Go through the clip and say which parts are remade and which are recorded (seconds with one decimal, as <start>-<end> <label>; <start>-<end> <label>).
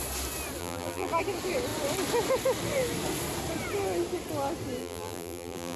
0.0-0.6 recorded; 0.6-1.1 remade; 1.1-4.8 recorded; 4.8-5.8 remade